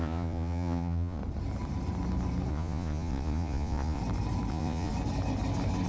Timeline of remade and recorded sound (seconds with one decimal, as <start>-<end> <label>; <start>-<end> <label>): 0.0-1.2 remade; 1.2-2.5 recorded; 2.5-4.0 remade; 4.0-4.5 recorded; 4.5-4.9 remade; 4.9-5.9 recorded